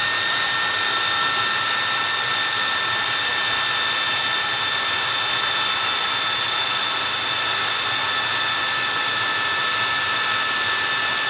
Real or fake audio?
real